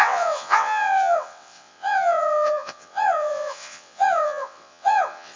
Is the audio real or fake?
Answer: fake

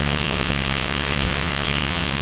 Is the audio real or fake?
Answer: fake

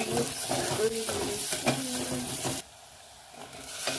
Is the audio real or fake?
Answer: real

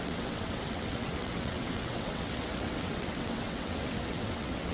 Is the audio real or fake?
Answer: fake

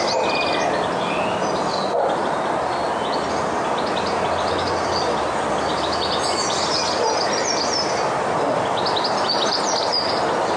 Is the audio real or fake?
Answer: real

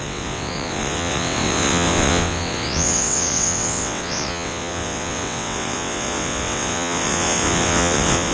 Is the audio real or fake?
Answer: fake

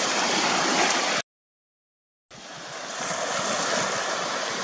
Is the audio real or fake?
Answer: real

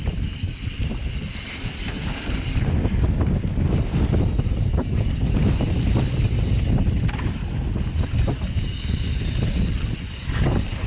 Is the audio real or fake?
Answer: real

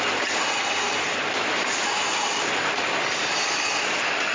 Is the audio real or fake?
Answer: real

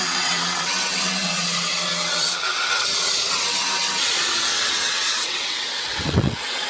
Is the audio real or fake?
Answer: fake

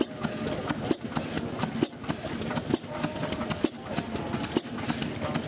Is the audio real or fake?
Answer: real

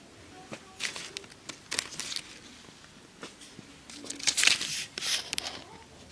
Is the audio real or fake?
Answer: real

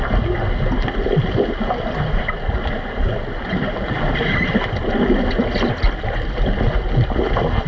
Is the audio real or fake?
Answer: real